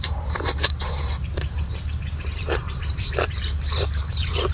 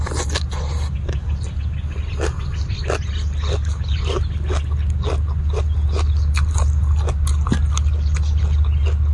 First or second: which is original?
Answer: second